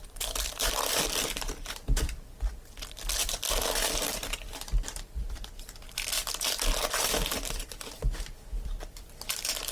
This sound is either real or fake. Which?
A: fake